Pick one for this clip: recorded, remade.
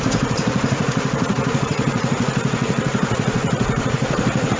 remade